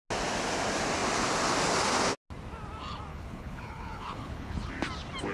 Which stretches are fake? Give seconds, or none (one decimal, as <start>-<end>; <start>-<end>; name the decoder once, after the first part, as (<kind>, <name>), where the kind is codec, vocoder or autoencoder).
3.1-4.7 (codec, HILCodec)